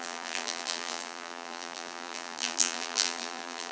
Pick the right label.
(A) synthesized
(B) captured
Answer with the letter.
A